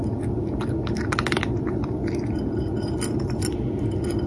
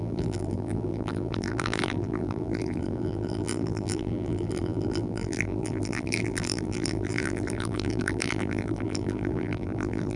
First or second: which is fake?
second